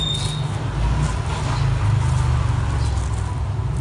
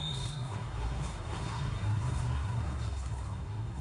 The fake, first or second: second